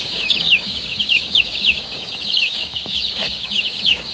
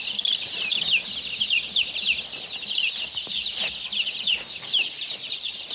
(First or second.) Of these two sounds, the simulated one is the first